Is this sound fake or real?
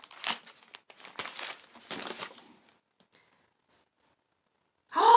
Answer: real